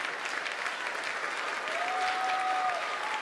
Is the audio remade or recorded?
recorded